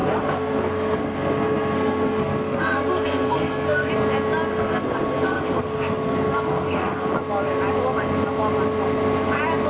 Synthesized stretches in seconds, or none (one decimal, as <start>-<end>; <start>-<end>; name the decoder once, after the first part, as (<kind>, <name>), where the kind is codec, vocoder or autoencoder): 0.0-3.9 (codec, SNAC); 4.5-7.1